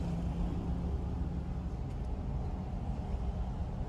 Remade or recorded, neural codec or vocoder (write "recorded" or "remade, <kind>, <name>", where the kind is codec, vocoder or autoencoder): recorded